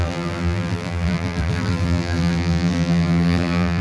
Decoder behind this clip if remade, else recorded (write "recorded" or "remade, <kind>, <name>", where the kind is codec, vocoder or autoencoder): remade, vocoder, BigVGAN v2